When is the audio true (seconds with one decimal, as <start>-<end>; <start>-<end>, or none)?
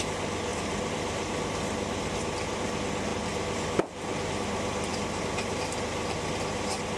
0.0-7.0